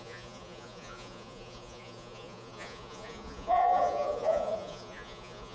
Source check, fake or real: fake